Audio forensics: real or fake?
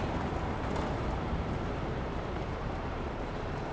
fake